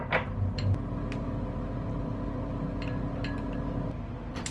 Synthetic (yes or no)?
no